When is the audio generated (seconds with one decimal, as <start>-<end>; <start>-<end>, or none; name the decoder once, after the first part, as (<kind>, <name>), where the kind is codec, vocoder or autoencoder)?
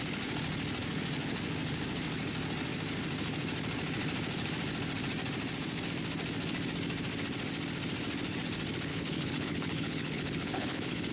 8.9-11.1 (codec, HILCodec)